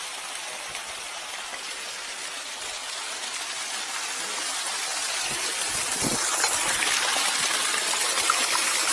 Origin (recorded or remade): recorded